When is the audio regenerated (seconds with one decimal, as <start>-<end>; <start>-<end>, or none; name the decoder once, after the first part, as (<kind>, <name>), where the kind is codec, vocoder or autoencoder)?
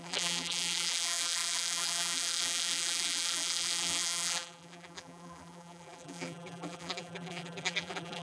0.0-8.2 (vocoder, BigVGAN v2)